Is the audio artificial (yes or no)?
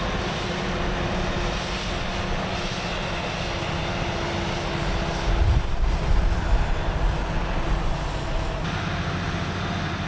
no